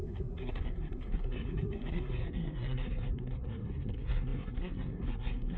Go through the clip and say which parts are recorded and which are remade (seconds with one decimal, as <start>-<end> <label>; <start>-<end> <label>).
0.0-5.6 remade